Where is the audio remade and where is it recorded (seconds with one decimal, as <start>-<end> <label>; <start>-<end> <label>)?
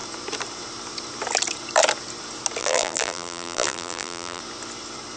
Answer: 0.0-2.6 recorded; 2.6-4.4 remade; 4.4-5.2 recorded